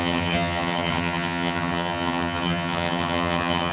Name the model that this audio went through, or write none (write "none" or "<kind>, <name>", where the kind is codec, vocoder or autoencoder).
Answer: vocoder, HiFi-GAN